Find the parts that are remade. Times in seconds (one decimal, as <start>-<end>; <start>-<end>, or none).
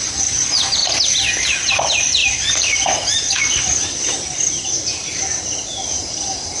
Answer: 0.0-0.8; 1.7-2.2